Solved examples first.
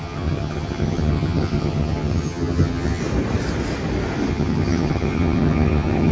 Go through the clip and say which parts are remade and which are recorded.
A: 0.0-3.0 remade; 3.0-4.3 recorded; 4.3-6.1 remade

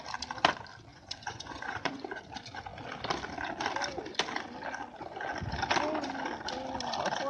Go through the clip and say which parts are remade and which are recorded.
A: 0.0-0.9 recorded; 0.9-2.2 remade; 2.2-7.3 recorded

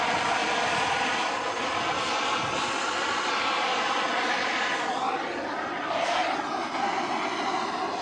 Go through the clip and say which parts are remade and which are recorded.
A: 0.0-8.0 recorded

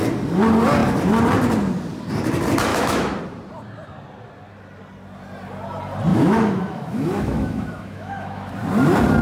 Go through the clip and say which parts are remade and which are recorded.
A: 0.0-2.7 recorded; 2.7-3.2 remade; 3.2-6.1 recorded; 6.1-8.5 remade; 8.5-9.2 recorded

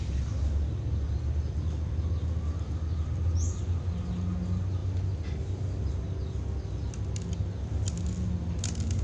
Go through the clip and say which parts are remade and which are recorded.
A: 0.0-9.0 recorded

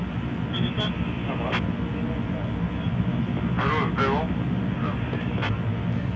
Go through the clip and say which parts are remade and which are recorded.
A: 0.0-6.2 recorded